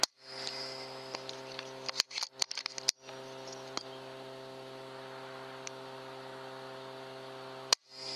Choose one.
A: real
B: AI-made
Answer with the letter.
A